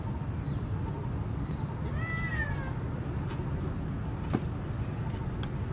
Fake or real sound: real